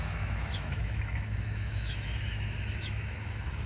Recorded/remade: remade